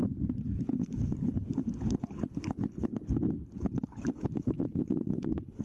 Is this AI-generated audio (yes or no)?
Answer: yes